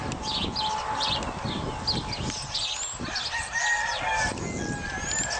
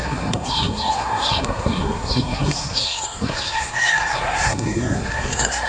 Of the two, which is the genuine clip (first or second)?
first